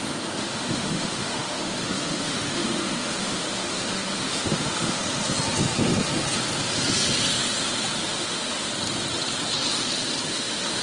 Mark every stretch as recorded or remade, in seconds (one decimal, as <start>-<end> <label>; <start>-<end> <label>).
0.0-5.0 remade; 5.0-8.0 recorded; 8.0-8.7 remade; 8.7-10.3 recorded; 10.3-10.8 remade